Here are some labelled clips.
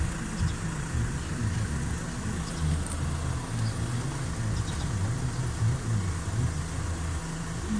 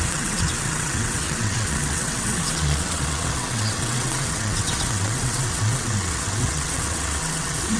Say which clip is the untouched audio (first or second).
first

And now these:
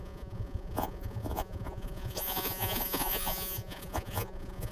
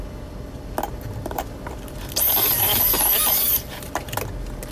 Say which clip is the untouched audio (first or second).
second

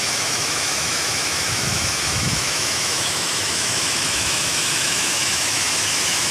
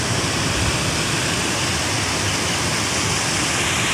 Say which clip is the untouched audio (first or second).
second